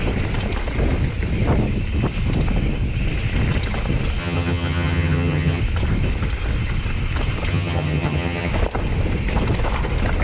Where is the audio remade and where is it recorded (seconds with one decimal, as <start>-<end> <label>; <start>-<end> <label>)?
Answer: 0.0-4.2 recorded; 4.2-5.6 remade; 5.6-7.5 recorded; 7.5-8.5 remade; 8.5-10.2 recorded